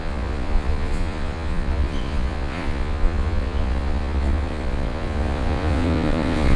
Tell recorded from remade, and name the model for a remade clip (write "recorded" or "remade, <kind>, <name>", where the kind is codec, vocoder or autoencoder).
remade, vocoder, Vocos